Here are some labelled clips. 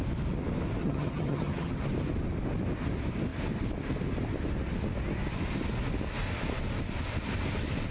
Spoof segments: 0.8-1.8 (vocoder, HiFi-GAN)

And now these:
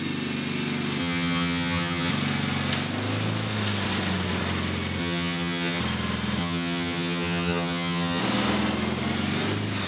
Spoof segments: 1.0-2.1 (vocoder, HiFi-GAN); 5.0-5.8; 6.4-8.2